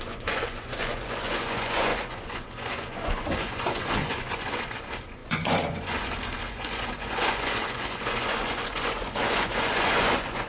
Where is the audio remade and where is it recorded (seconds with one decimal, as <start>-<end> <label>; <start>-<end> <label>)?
0.0-10.5 remade